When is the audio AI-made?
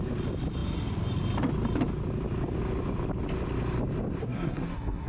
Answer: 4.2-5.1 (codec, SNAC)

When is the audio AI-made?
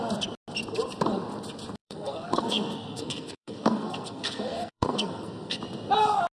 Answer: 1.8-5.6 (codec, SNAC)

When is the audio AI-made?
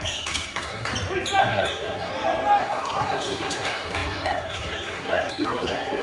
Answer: 0.0-0.9 (codec, SNAC); 1.4-2.1; 2.6-6.0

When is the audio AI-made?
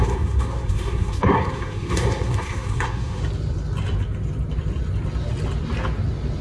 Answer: 0.0-3.2 (codec, SNAC)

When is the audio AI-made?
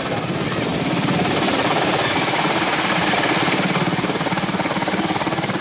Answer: none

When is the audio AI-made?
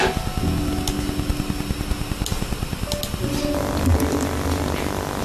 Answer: none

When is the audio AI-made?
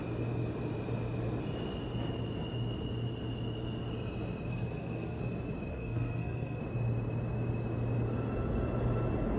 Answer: 4.5-5.2 (codec, SNAC); 5.7-6.6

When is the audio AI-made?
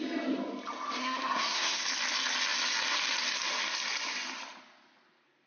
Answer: 1.0-1.8 (codec, SNAC)